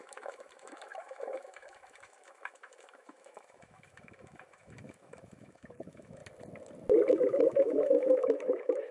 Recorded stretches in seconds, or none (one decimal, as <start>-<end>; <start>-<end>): 6.2-7.1